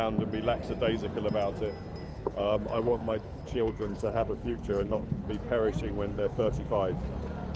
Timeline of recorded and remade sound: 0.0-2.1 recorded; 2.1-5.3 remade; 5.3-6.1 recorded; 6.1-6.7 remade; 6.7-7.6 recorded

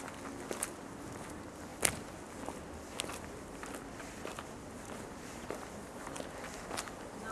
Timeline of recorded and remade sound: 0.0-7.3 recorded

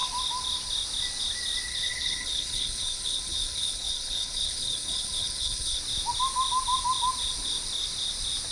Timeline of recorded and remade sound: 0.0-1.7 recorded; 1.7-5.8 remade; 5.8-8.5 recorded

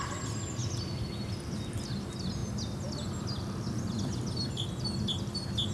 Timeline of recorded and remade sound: 0.0-5.7 recorded

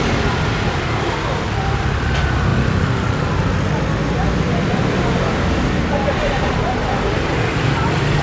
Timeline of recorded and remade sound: 0.0-8.2 recorded

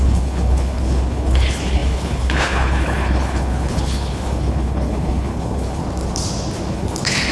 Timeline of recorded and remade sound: 0.0-5.8 remade; 5.8-6.7 recorded; 6.7-7.3 remade